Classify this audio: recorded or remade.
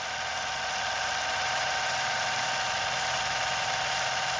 recorded